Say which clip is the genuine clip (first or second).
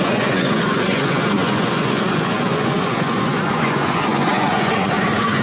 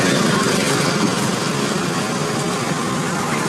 second